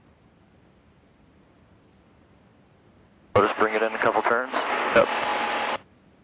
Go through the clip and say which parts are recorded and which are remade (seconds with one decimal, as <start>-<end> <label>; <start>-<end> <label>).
0.0-6.2 recorded